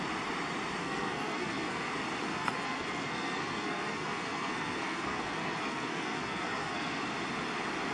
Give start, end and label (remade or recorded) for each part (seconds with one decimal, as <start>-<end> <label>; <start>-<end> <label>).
0.0-0.8 recorded; 0.8-1.9 remade; 1.9-2.3 recorded; 2.3-7.0 remade; 7.0-7.9 recorded